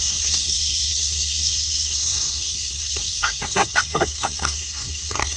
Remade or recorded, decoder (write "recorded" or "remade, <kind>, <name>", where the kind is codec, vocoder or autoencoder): remade, codec, SNAC